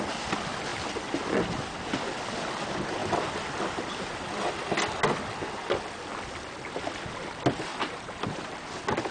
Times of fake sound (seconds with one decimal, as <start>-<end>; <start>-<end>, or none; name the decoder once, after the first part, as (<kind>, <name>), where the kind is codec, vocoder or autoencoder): 7.7-8.5 (vocoder, BigVGAN v2)